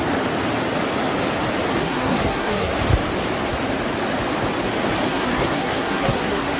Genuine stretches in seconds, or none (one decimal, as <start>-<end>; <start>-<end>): 0.0-1.8; 2.7-5.1